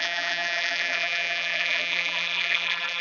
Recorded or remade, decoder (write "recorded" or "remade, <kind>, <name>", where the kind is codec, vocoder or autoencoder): remade, vocoder, BigVGAN v2